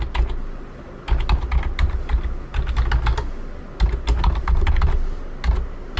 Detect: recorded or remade recorded